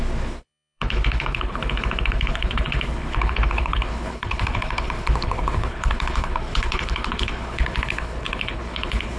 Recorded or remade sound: remade